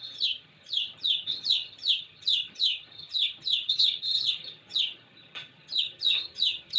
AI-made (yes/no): yes